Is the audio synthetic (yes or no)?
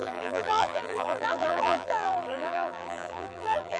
yes